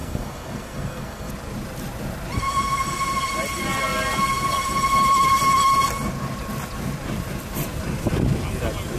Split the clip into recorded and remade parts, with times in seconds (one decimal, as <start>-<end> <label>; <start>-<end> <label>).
0.0-1.3 remade; 1.3-9.0 recorded